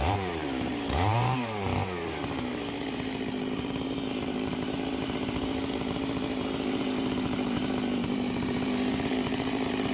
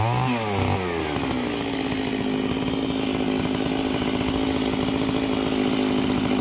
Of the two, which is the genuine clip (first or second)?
second